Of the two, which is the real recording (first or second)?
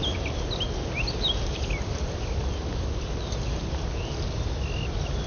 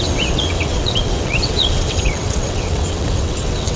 first